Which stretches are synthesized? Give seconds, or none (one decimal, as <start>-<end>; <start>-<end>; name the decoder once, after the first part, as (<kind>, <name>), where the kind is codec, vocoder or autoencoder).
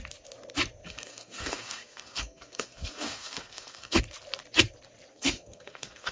0.8-4.0 (codec, SNAC); 5.1-6.1